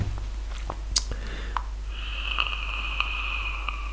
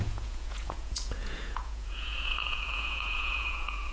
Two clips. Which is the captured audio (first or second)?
first